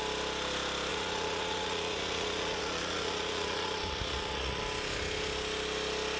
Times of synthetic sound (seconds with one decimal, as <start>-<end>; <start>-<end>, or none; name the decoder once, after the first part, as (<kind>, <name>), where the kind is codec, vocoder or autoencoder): 0.9-4.6 (vocoder, Vocos)